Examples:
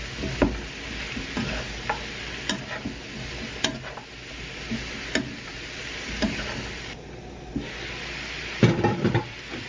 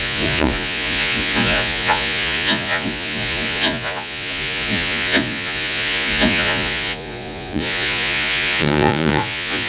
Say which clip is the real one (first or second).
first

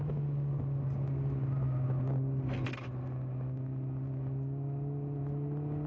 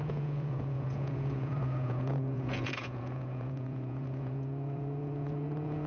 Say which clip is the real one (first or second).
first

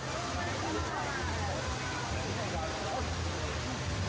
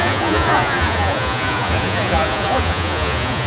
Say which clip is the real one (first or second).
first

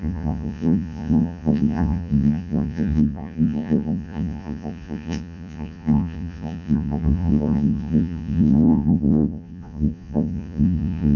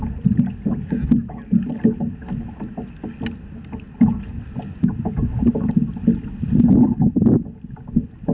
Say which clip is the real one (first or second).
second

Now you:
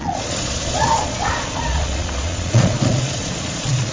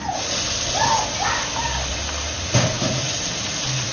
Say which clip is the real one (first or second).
second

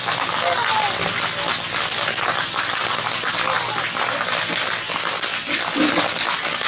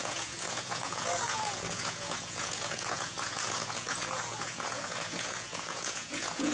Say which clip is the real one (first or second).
first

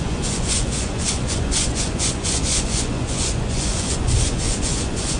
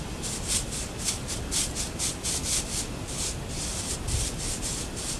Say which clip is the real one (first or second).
second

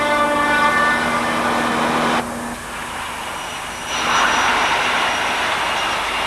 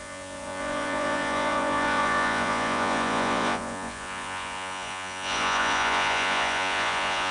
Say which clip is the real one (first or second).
first